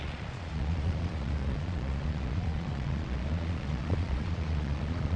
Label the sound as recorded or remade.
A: remade